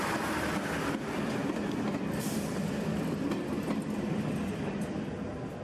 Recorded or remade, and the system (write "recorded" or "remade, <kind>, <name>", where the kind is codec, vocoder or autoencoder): recorded